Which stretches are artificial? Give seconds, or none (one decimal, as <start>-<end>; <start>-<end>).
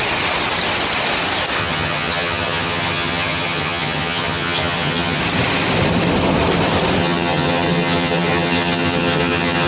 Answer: 1.6-5.2; 7.0-9.7